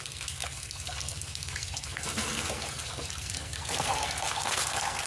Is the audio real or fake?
fake